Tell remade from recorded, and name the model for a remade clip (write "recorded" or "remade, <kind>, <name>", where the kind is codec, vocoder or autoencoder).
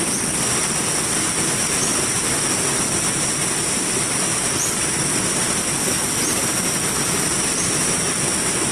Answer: recorded